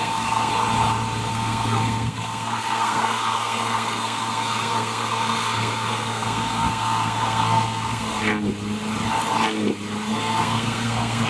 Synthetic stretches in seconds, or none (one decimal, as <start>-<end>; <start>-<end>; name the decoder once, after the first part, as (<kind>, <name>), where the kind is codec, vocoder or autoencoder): 0.0-0.5 (codec, SNAC); 1.3-8.3; 10.1-11.3